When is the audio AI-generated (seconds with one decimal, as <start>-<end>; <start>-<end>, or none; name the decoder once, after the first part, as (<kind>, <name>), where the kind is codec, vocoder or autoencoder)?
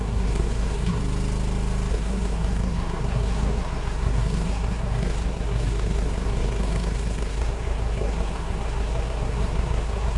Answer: 0.0-1.0 (codec, SNAC); 1.9-10.2